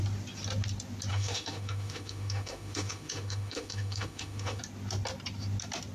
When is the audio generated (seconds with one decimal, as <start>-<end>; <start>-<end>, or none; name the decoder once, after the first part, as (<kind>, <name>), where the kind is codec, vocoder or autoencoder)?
1.1-4.6 (autoencoder, DAC-VAE)